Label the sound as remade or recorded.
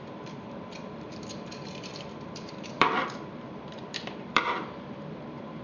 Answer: remade